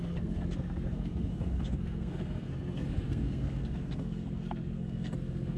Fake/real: fake